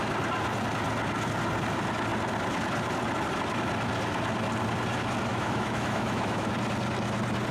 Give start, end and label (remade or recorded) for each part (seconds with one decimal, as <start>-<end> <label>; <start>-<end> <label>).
0.0-5.3 recorded; 5.3-6.5 remade; 6.5-7.5 recorded